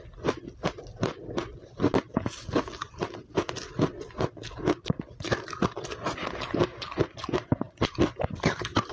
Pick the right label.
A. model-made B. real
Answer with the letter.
B